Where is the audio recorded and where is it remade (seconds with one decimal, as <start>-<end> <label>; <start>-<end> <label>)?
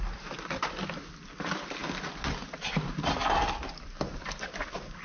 0.0-1.8 remade; 1.8-2.4 recorded; 2.4-5.0 remade